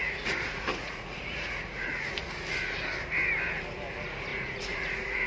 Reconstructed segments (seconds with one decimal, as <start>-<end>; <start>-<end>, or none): 0.0-2.3; 4.3-5.3